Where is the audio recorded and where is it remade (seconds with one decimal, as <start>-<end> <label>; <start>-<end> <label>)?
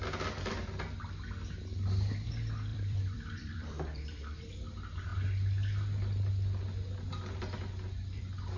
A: 0.0-2.7 recorded; 2.7-4.4 remade; 4.4-8.6 recorded